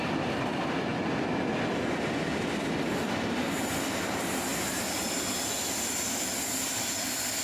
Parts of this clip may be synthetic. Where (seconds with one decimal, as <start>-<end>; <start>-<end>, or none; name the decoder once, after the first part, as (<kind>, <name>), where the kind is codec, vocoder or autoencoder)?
none

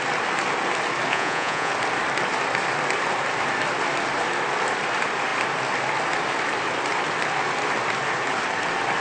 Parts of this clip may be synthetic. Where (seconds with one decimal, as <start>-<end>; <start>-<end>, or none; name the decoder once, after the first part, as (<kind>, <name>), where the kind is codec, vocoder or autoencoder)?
1.1-1.7 (vocoder, Vocos)

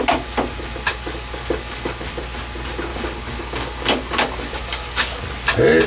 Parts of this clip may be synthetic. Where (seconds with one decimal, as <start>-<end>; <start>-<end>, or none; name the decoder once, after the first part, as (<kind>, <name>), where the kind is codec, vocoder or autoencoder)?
0.9-2.1 (codec, DAC); 2.9-5.2

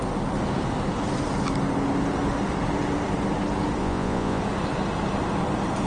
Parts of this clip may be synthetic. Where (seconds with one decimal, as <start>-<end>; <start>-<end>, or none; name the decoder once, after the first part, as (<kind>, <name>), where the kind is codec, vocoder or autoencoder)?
3.8-4.4 (vocoder, Vocos)

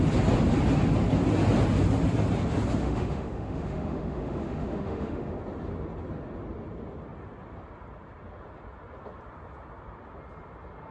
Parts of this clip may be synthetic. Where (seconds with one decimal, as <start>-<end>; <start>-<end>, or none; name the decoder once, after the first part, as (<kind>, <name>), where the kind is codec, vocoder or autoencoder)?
2.8-5.4 (autoencoder, DAC-VAE)

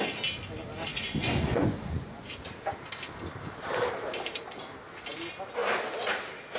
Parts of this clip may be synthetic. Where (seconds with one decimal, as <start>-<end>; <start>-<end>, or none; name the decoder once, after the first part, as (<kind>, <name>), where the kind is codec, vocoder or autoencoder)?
0.9-2.3 (vocoder, Vocos)